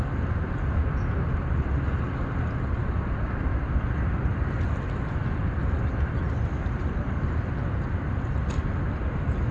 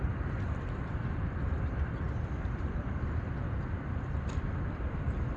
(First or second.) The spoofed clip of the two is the second